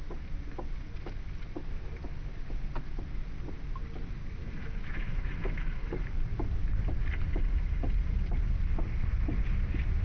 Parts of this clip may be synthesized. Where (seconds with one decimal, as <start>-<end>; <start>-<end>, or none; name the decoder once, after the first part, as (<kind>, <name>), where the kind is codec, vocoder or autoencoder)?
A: 4.4-5.9 (autoencoder, DAC-VAE)